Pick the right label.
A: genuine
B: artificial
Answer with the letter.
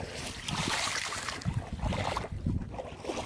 A